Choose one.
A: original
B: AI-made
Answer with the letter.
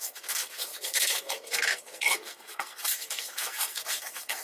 B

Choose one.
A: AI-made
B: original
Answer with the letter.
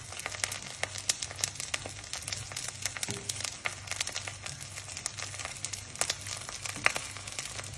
B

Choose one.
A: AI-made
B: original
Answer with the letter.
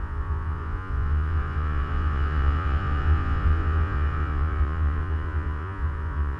A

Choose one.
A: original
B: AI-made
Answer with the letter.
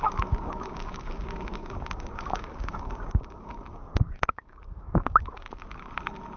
B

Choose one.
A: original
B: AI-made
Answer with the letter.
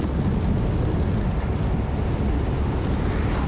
A